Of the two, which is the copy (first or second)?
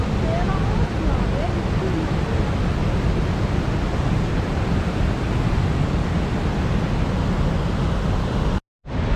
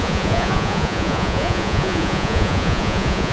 second